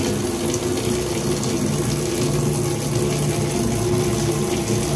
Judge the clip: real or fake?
real